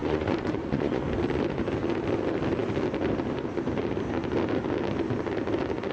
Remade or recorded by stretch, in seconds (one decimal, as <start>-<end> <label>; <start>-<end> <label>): 0.0-1.0 remade; 1.0-5.9 recorded